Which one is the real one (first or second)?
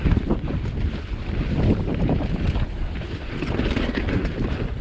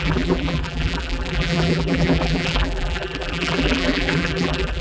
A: first